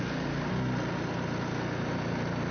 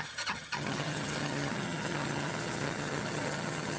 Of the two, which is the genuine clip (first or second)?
first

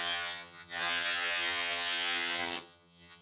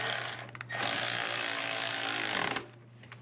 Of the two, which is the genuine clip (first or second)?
second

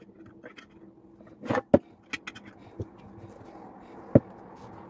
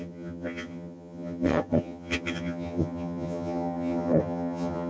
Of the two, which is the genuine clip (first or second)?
first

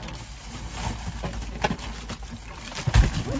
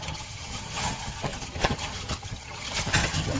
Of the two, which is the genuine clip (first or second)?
first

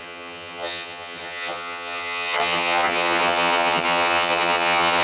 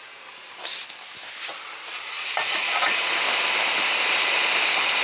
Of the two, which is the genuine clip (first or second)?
second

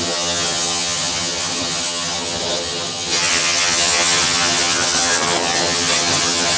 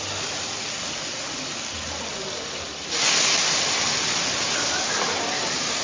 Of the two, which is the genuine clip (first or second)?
second